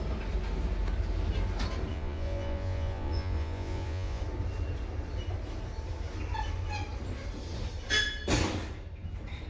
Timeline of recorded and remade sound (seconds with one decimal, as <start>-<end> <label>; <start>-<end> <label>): 0.0-1.9 recorded; 1.9-4.2 remade; 4.2-9.5 recorded